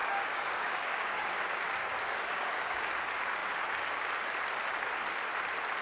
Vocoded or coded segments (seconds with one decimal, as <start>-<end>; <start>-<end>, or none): 0.0-1.4; 1.8-2.9